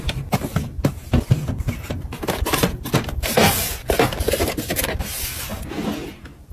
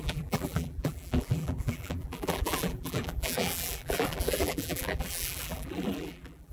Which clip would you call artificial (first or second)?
second